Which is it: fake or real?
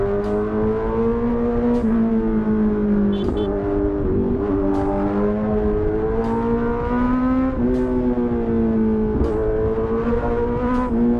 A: real